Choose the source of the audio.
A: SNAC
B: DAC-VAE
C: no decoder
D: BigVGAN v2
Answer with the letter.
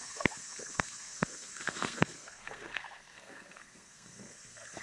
A